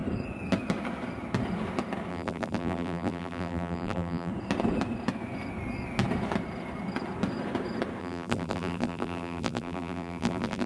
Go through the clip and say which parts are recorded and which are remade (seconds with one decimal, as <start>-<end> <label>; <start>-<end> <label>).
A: 0.0-2.1 recorded; 2.1-4.3 remade; 4.3-8.0 recorded; 8.0-10.7 remade